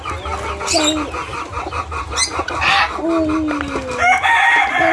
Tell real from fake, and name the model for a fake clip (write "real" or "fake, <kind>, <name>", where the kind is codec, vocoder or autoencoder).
real